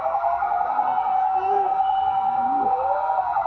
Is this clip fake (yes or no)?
yes